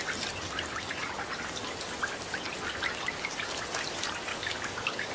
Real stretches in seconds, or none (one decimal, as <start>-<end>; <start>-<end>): 0.0-4.3